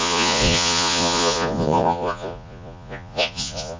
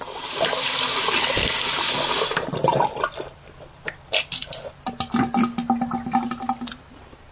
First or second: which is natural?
second